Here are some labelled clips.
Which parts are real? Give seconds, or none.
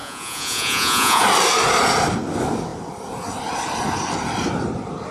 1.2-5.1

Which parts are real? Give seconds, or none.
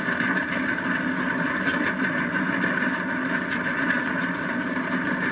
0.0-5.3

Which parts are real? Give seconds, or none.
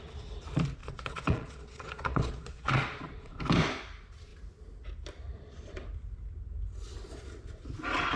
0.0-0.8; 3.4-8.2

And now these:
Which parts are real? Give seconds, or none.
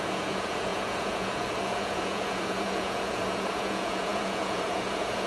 none